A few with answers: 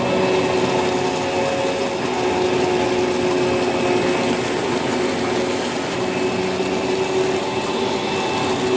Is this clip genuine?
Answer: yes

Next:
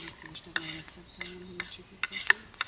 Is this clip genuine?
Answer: yes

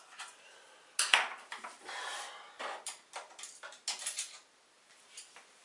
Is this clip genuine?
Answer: yes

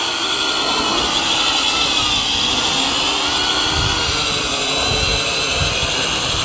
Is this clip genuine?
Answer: yes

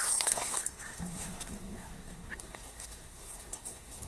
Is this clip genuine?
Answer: no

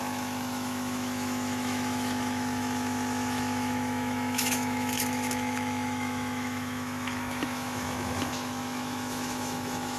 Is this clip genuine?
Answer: no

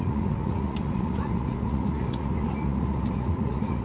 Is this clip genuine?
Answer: no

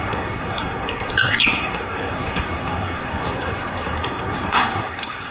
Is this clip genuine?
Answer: no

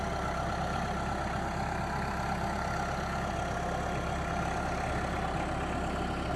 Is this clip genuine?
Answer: yes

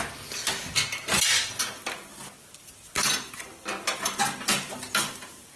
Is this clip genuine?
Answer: yes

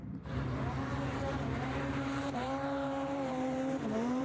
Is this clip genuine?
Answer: no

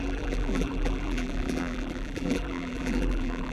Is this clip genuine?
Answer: no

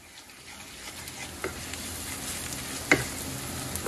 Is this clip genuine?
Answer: yes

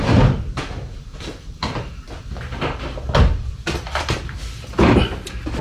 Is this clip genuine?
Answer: yes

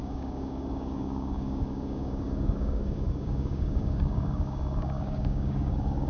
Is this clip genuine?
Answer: no